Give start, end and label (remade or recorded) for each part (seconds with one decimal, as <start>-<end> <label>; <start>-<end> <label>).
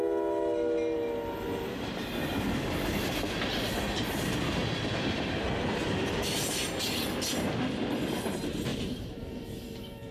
0.0-8.7 recorded; 8.7-10.1 remade